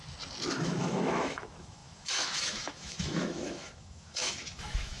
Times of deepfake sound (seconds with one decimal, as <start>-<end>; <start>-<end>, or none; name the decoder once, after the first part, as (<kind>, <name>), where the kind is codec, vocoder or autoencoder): 0.5-5.0 (autoencoder, DAC-VAE)